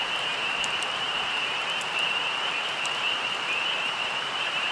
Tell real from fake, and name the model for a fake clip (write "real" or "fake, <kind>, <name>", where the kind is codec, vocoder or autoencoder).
fake, vocoder, BigVGAN v2